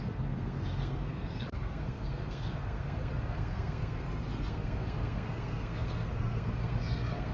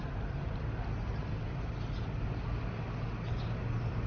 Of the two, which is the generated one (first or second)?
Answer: first